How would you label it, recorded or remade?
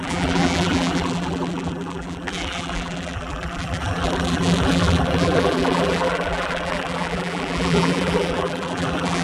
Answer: remade